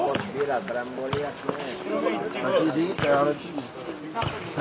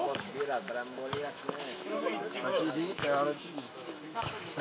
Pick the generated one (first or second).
second